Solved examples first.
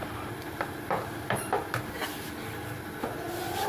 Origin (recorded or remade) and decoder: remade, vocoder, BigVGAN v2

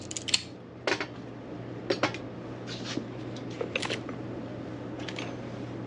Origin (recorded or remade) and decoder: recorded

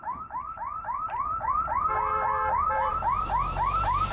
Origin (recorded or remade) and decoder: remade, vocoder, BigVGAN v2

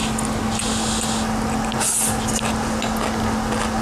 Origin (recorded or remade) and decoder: recorded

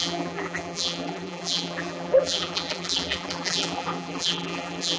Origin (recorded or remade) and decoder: remade, vocoder, BigVGAN v2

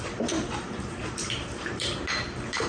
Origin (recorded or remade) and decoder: remade, vocoder, BigVGAN v2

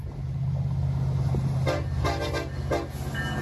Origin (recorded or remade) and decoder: recorded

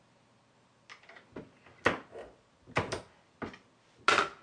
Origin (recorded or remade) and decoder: recorded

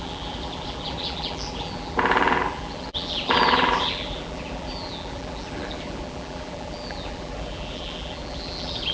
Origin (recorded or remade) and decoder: remade, vocoder, BigVGAN v2